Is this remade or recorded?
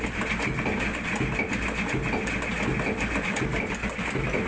recorded